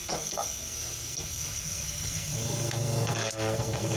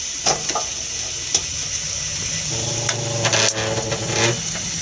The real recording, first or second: second